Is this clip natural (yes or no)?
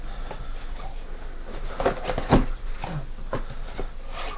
yes